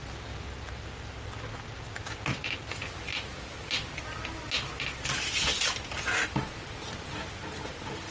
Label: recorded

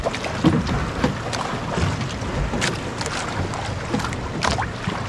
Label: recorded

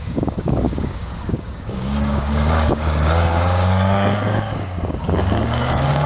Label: remade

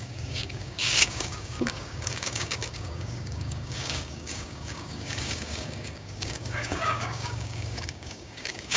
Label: remade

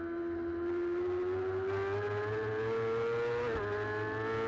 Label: recorded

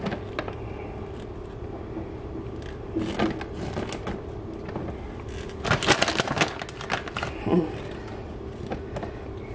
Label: recorded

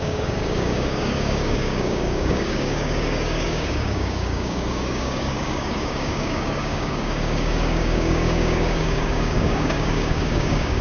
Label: remade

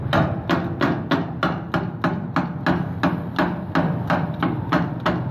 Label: recorded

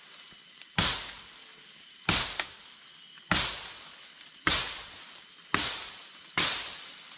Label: recorded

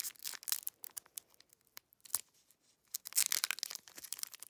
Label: recorded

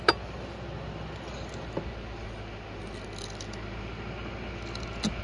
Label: recorded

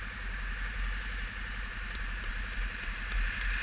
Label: recorded